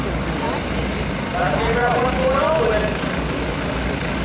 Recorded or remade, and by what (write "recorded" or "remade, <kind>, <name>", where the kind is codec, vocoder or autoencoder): recorded